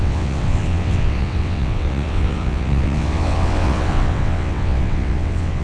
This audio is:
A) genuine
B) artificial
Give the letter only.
B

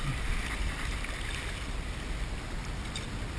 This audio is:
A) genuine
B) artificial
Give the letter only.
A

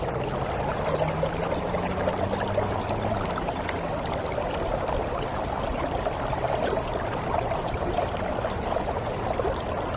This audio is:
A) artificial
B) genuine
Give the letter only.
B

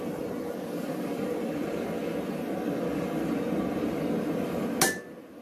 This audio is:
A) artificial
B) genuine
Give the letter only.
B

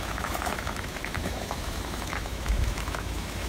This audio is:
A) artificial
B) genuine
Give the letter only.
A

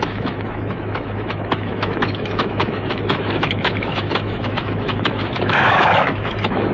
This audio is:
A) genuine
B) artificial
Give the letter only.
B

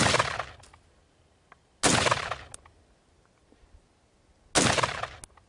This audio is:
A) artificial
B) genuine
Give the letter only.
B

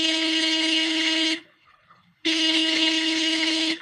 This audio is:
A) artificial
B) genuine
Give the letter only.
A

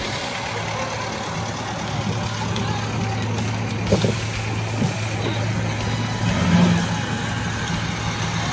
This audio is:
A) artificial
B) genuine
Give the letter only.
B